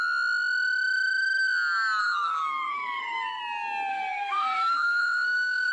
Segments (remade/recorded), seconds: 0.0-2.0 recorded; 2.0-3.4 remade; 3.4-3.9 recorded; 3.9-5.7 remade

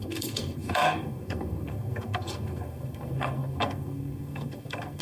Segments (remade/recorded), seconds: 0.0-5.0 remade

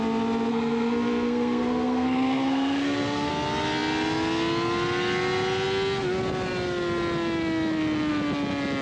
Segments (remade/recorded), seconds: 0.0-0.5 recorded; 0.5-3.3 remade; 3.3-8.8 recorded

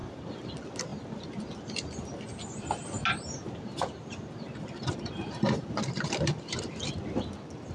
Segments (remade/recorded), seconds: 0.0-0.5 remade; 0.5-3.1 recorded; 3.1-6.8 remade; 6.8-7.7 recorded